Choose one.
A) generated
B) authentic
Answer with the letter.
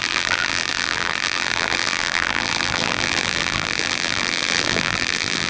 A